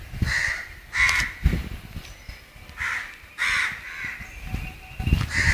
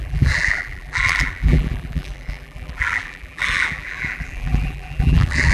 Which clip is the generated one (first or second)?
second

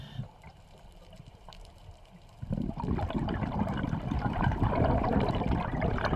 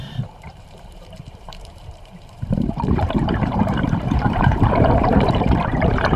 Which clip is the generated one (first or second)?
second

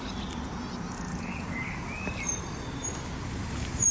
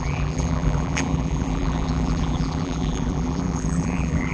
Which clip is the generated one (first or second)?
second